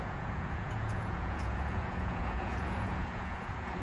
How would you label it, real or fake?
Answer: fake